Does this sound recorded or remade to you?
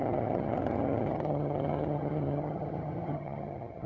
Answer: remade